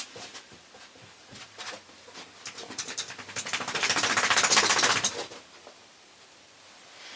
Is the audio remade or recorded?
recorded